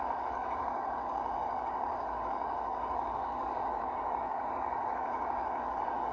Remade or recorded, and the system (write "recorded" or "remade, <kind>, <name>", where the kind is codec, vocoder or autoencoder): remade, codec, DAC